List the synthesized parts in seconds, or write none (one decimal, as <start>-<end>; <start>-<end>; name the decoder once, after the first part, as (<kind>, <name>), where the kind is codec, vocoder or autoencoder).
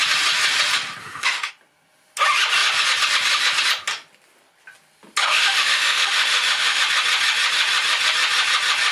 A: 1.0-1.5 (autoencoder, DAC-VAE); 5.2-6.8